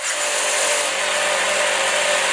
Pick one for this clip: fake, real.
real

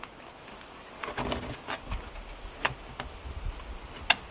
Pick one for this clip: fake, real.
real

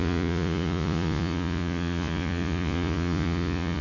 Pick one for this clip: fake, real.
fake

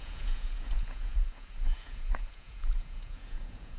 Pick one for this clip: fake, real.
fake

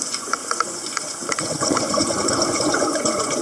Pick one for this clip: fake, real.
fake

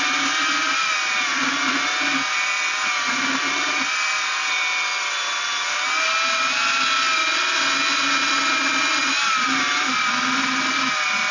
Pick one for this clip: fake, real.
real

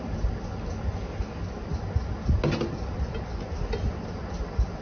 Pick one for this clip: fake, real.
real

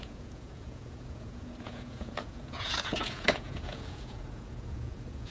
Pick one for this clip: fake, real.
fake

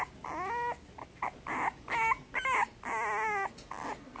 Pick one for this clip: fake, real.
real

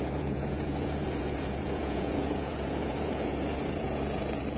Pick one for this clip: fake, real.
fake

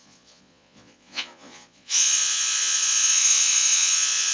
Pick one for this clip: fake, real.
fake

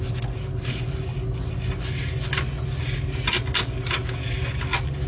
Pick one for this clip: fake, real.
real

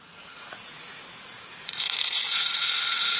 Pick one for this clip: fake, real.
fake